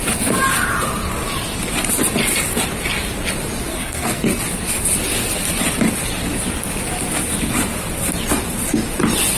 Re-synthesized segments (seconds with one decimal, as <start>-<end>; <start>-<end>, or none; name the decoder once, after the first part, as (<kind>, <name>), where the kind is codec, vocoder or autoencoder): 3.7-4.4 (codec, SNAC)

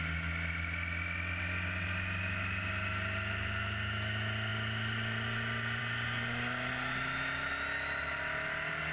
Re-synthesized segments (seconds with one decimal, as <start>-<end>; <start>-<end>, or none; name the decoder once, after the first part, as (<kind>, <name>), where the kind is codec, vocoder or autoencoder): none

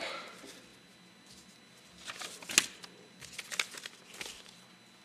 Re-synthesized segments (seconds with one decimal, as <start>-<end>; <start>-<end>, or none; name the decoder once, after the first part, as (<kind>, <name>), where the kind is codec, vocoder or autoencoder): none

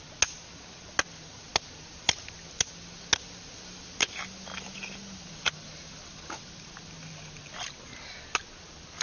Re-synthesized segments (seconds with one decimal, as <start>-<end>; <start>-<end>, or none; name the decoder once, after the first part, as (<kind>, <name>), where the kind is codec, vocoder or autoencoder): none

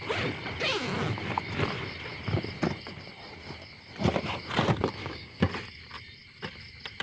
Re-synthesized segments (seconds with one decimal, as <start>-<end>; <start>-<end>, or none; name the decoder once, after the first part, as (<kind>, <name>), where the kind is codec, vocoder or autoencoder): 5.0-5.5 (codec, DAC)

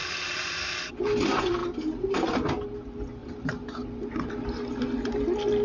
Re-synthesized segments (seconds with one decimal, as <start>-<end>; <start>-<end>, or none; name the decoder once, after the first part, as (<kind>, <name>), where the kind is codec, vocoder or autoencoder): 0.0-0.6 (vocoder, BigVGAN v2); 1.6-2.3; 3.2-5.1

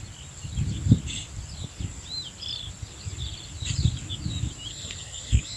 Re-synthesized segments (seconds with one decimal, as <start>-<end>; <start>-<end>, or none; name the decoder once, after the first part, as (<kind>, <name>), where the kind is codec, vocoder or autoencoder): 4.7-5.6 (codec, SNAC)